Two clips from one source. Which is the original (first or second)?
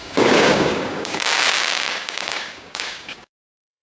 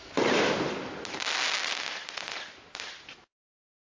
second